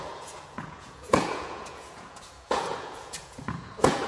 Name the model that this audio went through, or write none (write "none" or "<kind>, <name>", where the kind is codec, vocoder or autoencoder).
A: vocoder, Vocos